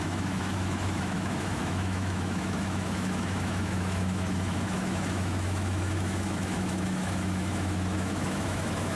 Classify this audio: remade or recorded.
remade